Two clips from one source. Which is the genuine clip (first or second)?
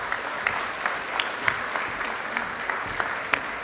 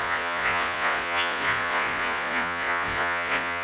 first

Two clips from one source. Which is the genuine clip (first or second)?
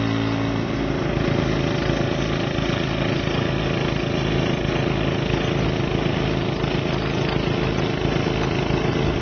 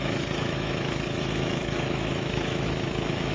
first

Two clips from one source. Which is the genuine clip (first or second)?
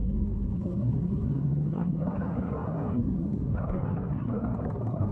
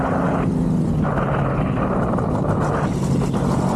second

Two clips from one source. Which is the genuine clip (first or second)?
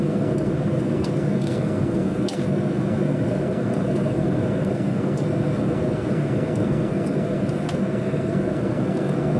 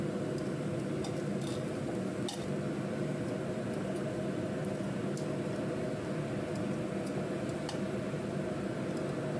second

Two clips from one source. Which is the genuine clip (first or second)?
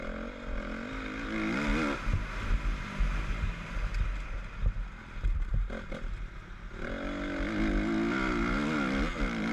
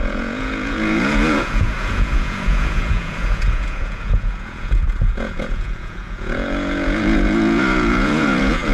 first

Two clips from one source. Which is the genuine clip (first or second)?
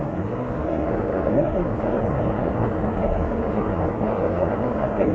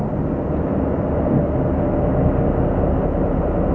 second